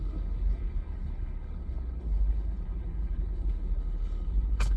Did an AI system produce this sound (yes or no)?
yes